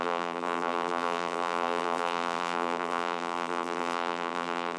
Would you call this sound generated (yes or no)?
yes